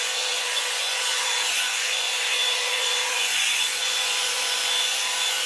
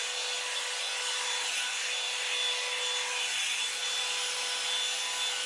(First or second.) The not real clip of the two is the first